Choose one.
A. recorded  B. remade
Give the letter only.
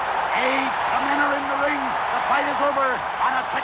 A